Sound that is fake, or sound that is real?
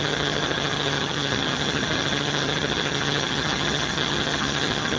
fake